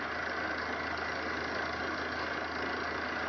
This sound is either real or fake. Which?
real